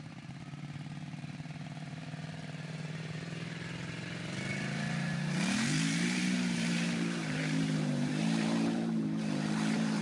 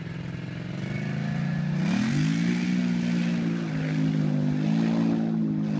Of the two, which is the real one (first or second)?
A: second